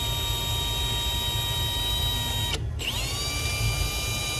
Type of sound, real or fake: real